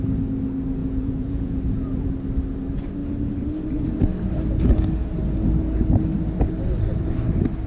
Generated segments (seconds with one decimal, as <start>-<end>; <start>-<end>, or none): 0.8-2.1

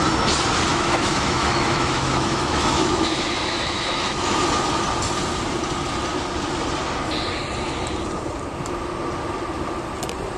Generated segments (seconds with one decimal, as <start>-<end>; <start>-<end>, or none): 0.7-4.4